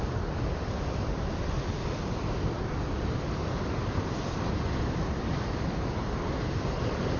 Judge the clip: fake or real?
real